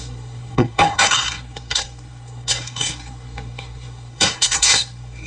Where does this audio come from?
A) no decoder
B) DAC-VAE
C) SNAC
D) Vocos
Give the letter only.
C